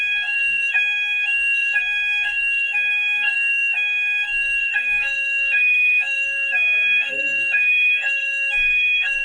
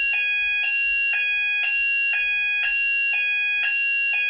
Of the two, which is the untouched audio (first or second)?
second